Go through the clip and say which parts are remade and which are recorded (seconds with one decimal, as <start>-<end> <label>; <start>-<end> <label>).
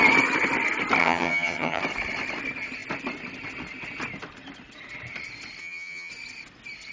0.0-1.0 recorded; 1.0-1.8 remade; 1.8-5.6 recorded; 5.6-6.1 remade; 6.1-6.9 recorded